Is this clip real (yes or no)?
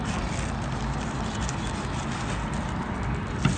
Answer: yes